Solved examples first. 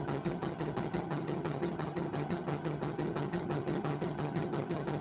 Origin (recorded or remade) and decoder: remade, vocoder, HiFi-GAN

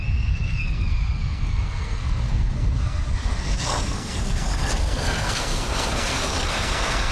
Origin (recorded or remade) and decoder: remade, codec, SNAC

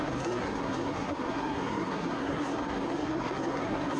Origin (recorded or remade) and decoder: remade, codec, SNAC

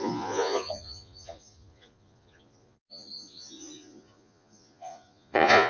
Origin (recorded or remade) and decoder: remade, vocoder, Vocos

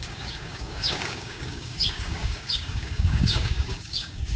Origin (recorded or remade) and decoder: remade, codec, DAC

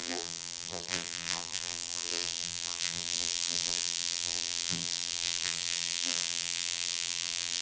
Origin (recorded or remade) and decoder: remade, vocoder, BigVGAN v2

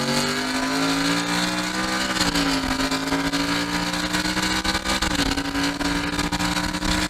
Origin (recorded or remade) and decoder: recorded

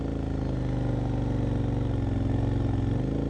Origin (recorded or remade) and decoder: recorded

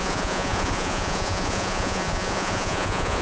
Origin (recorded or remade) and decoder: remade, vocoder, Vocos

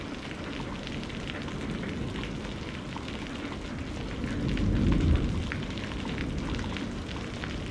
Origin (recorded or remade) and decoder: recorded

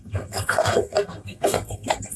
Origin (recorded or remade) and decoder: remade, codec, SNAC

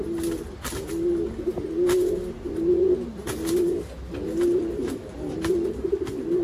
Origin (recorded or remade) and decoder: recorded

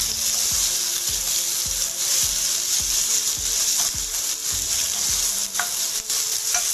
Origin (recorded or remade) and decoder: recorded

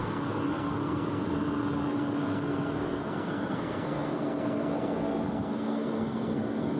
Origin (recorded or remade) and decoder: remade, codec, SNAC